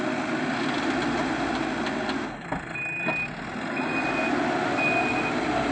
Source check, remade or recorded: recorded